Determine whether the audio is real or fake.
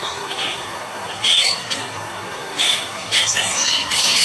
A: fake